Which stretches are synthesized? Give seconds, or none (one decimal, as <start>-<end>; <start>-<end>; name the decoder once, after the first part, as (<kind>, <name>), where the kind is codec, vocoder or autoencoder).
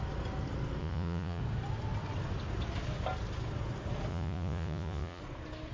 0.8-1.4 (vocoder, Vocos); 4.1-5.2